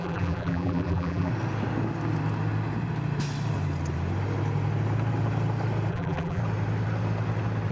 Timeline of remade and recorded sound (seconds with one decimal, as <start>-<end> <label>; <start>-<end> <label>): 0.0-1.3 remade; 1.3-5.9 recorded; 5.9-6.4 remade; 6.4-7.7 recorded